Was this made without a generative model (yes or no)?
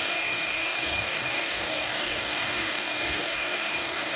no